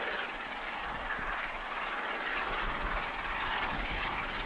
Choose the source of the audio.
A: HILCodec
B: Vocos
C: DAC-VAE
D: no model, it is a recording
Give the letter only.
D